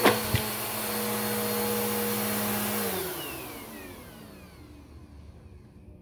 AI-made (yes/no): no